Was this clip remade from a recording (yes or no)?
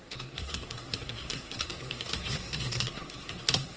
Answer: yes